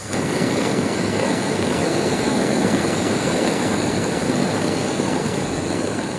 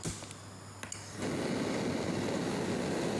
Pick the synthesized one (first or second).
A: first